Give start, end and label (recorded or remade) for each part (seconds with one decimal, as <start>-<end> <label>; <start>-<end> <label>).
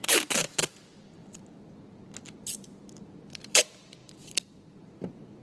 0.0-1.2 remade; 1.2-3.3 recorded; 3.3-5.4 remade